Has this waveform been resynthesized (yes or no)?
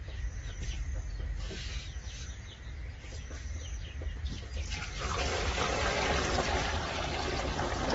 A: no